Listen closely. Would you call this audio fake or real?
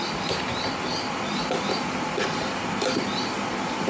real